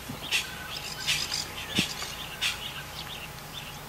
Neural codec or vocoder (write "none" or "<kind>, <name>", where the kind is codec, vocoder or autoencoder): none